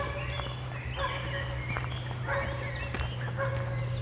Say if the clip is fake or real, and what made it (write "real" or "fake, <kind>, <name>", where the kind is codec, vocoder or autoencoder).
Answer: real